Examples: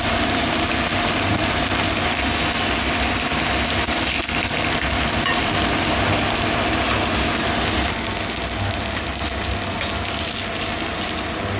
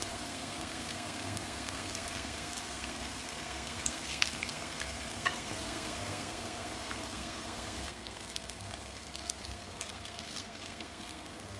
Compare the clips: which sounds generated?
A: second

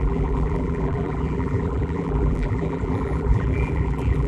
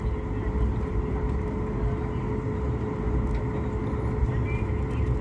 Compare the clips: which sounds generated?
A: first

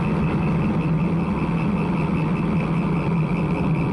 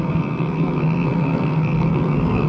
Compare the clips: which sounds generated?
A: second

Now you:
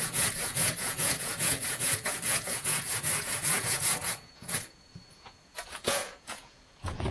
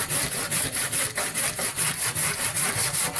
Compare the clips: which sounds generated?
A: first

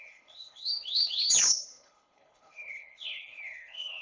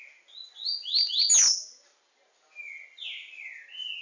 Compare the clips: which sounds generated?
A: first